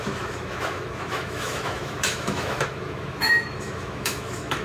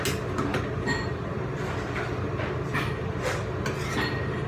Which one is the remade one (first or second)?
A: first